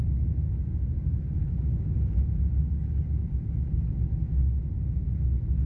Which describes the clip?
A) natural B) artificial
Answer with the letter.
A